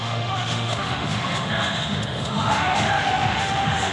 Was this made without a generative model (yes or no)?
no